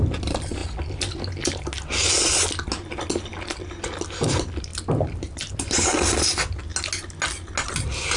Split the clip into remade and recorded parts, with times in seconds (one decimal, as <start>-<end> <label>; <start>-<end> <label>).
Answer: 0.0-8.2 recorded

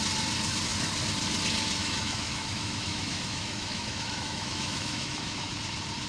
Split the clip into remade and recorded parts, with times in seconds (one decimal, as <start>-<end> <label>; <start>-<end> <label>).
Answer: 0.0-1.8 recorded; 1.8-5.5 remade; 5.5-6.1 recorded

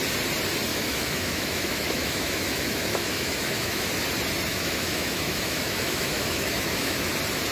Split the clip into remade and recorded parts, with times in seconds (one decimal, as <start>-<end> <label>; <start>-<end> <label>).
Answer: 0.0-0.7 recorded; 0.7-3.9 remade; 3.9-4.5 recorded; 4.5-7.1 remade; 7.1-7.5 recorded

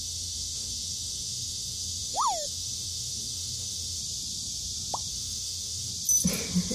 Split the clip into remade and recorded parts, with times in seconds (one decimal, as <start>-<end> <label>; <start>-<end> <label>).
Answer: 0.0-4.0 remade; 4.0-5.1 recorded; 5.1-5.9 remade; 5.9-6.7 recorded

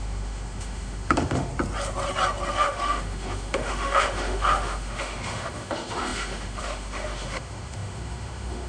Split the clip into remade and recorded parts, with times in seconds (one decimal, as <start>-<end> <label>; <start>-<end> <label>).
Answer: 0.0-1.5 remade; 1.5-2.5 recorded; 2.5-8.7 remade

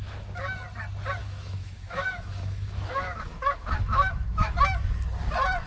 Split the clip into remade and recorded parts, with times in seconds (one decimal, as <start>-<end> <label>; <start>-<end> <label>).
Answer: 0.0-1.2 recorded; 1.2-4.6 remade; 4.6-5.7 recorded